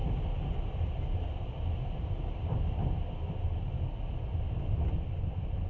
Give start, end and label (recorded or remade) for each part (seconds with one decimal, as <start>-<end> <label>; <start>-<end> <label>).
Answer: 0.0-5.7 recorded